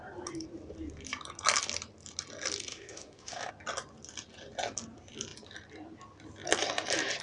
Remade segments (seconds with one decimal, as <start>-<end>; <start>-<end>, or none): 2.7-3.5